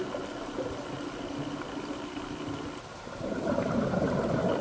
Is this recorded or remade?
recorded